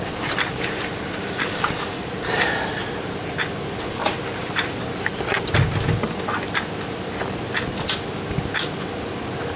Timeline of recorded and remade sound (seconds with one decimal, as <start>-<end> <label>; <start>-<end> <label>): 0.0-0.5 recorded; 0.5-2.9 remade; 2.9-4.0 recorded; 4.0-4.8 remade; 4.8-9.6 recorded